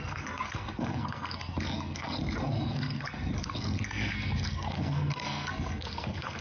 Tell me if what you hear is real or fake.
fake